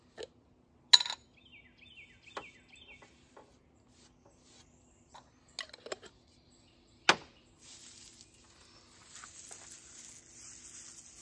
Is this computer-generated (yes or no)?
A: no